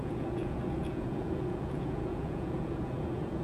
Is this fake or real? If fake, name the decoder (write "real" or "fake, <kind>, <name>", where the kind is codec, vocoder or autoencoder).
fake, vocoder, Vocos